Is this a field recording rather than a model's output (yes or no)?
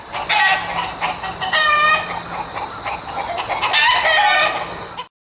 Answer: yes